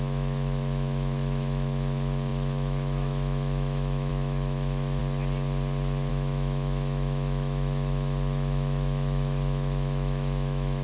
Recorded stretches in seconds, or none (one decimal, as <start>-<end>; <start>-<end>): 5.0-6.1